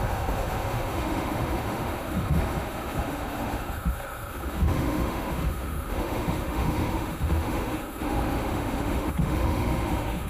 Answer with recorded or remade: remade